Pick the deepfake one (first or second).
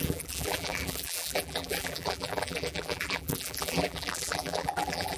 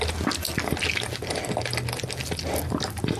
first